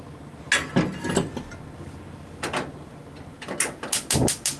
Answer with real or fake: real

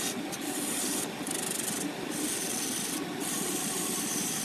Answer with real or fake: fake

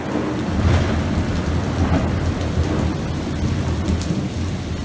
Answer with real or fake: real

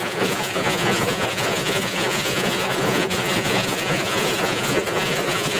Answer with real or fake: fake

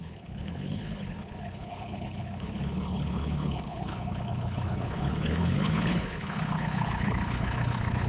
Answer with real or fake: fake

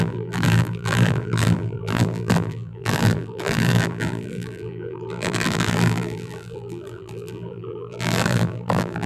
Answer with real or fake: fake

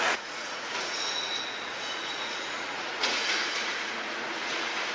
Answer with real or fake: fake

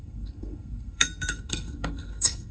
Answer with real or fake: fake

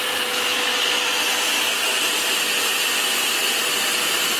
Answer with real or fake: real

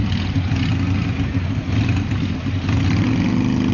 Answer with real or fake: real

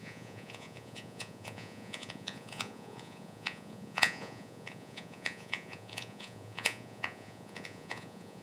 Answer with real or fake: fake